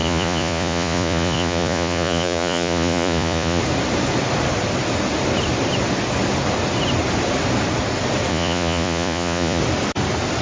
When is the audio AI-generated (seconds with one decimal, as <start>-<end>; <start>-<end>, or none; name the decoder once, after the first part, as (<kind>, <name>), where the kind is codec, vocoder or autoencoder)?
0.0-3.6 (vocoder, Vocos); 8.3-9.6

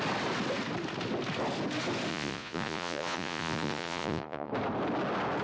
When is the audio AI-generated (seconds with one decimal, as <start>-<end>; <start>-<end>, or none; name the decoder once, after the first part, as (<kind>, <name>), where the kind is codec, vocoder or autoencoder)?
2.1-4.5 (vocoder, Vocos)

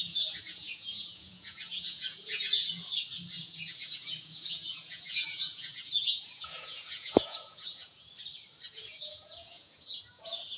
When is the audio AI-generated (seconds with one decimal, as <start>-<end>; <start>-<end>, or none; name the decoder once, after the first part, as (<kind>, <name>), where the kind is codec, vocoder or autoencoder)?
0.0-2.9 (vocoder, Vocos); 3.4-8.1; 8.7-10.6

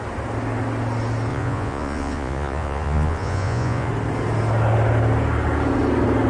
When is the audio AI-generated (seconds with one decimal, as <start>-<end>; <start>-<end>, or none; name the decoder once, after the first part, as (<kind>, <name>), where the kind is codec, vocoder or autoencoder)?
1.3-3.9 (vocoder, Vocos)

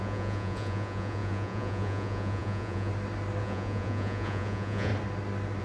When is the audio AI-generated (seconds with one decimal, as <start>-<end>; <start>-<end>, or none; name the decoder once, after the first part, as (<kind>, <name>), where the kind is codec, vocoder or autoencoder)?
0.0-2.9 (vocoder, Vocos); 3.4-4.9